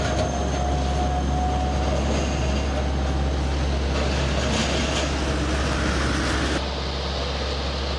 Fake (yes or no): no